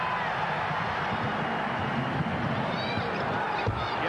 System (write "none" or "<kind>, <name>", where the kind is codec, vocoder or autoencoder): none